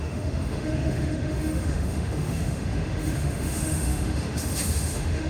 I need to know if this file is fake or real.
fake